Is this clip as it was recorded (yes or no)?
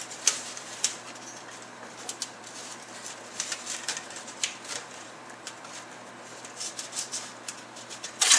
no